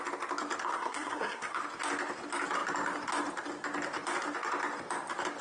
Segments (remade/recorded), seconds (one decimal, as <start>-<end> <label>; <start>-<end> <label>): 0.0-0.7 recorded; 0.7-1.6 remade; 1.6-5.4 recorded